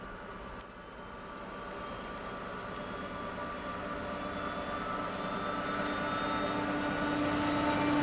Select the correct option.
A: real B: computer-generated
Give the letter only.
A